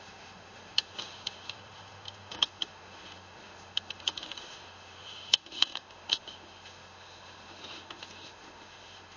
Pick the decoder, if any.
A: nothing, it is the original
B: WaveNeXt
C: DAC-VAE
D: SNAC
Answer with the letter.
C